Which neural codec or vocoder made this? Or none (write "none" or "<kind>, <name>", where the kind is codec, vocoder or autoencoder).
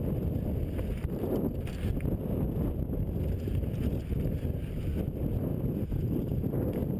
none